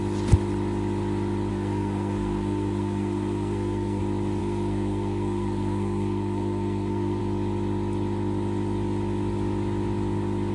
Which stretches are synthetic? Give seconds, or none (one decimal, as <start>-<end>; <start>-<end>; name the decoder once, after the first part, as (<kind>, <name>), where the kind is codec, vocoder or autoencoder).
1.5-4.0 (codec, SNAC); 4.4-7.2